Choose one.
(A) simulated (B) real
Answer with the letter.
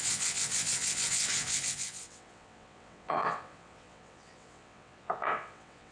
A